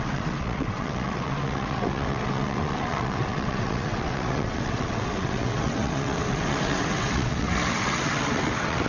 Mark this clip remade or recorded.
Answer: remade